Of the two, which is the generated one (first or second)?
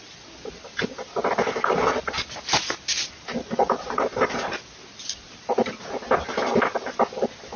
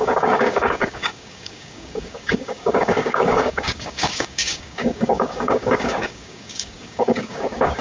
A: second